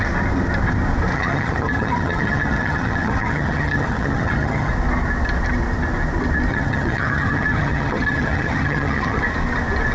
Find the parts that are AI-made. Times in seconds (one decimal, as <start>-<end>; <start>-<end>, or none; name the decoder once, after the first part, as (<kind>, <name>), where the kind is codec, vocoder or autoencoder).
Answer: 1.1-4.7 (vocoder, HiFi-GAN); 6.5-9.2